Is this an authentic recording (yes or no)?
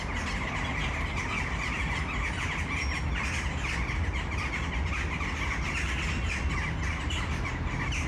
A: yes